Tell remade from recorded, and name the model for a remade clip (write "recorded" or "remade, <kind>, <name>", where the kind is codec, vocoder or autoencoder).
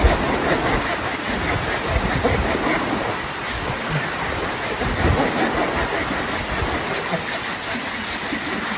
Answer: recorded